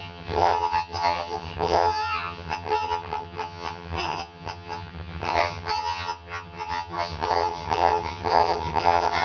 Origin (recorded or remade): remade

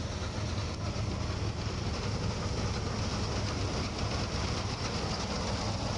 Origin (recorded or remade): recorded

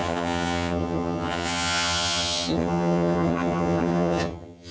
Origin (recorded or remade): remade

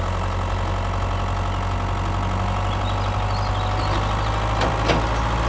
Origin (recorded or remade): recorded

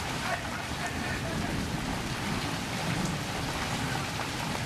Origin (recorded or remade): recorded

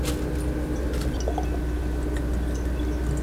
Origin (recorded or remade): recorded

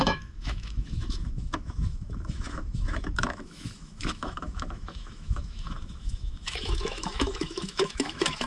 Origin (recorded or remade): remade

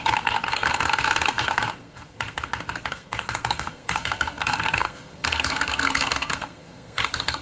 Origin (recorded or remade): remade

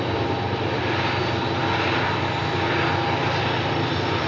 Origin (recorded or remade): recorded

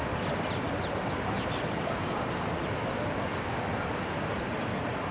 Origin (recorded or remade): recorded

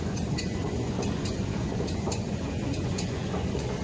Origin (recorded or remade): remade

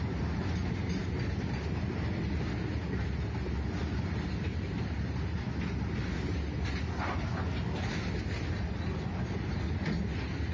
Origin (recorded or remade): recorded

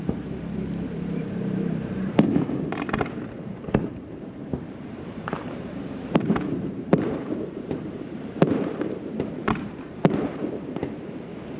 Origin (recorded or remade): remade